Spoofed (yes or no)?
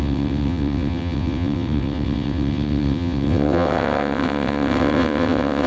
yes